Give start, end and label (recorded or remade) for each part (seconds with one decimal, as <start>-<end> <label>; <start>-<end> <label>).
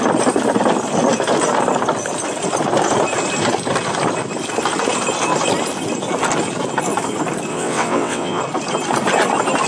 0.0-7.5 recorded; 7.5-8.4 remade; 8.4-9.7 recorded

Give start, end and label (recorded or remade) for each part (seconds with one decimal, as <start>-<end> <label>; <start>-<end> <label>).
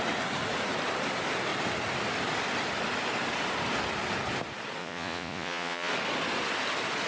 0.0-4.8 recorded; 4.8-5.9 remade; 5.9-7.1 recorded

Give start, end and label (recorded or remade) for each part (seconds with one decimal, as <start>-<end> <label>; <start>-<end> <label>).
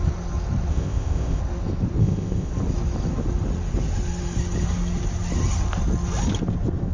0.0-0.7 recorded; 0.7-1.4 remade; 1.4-2.0 recorded; 2.0-2.5 remade; 2.5-6.9 recorded